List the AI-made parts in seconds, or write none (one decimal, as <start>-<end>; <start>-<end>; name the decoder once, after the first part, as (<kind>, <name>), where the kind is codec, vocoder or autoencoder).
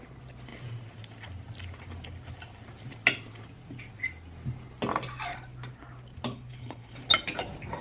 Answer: 6.3-7.0 (codec, HILCodec)